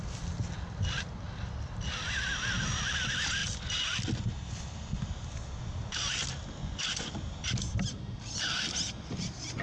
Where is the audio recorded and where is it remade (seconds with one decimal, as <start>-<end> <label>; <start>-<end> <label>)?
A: 0.0-6.6 recorded; 6.6-7.1 remade; 7.1-9.6 recorded